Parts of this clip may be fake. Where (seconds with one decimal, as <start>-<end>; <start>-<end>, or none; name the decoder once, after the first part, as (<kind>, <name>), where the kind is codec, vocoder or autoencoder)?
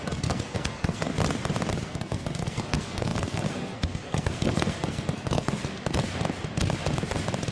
0.0-1.1 (codec, SNAC); 1.8-5.6